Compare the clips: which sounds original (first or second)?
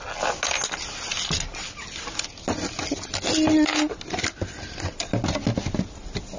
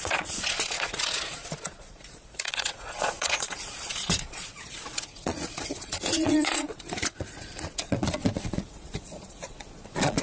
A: first